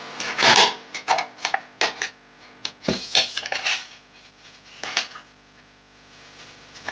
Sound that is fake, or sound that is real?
real